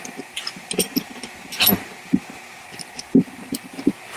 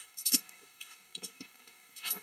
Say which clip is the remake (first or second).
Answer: second